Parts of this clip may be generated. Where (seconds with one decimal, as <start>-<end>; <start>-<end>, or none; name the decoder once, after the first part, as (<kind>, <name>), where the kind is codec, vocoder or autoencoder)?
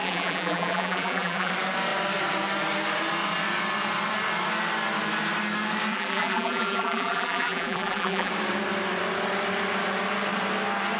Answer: 0.0-1.5 (vocoder, BigVGAN v2); 5.9-8.3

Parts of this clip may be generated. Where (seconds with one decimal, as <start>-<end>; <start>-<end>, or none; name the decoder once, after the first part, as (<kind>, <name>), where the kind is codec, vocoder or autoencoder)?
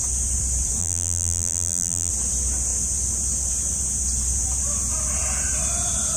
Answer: 0.8-2.1 (vocoder, BigVGAN v2)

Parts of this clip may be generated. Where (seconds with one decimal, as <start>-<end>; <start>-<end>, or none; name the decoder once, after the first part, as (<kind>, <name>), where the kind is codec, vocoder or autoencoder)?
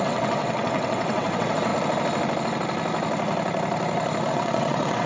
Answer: 0.0-1.7 (vocoder, WaveNeXt); 4.3-5.1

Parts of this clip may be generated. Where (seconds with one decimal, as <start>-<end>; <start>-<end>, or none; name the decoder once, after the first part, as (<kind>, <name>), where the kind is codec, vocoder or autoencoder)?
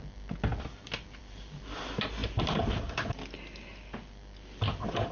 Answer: none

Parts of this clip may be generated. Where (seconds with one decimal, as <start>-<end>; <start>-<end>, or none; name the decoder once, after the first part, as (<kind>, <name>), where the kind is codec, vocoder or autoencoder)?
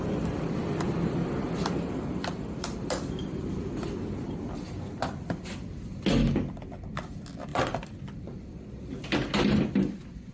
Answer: 7.5-8.5 (vocoder, BigVGAN v2)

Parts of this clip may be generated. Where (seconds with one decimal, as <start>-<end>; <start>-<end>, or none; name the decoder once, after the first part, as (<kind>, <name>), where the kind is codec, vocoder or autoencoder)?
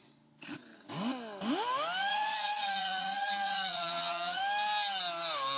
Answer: 2.0-4.4 (vocoder, Vocos)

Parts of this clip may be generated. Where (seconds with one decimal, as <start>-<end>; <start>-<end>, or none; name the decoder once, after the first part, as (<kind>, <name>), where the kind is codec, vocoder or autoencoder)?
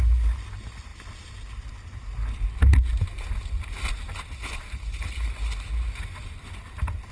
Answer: none